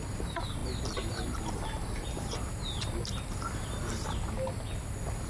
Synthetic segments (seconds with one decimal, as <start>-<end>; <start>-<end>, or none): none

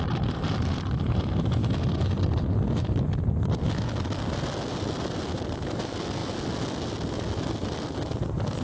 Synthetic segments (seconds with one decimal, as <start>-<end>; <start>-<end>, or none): none

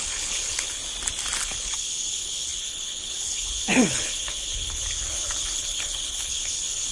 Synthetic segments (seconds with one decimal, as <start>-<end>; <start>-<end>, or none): 0.0-0.8; 1.4-6.9